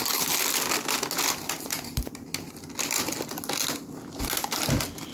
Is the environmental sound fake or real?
real